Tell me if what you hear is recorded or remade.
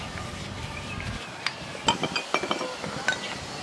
recorded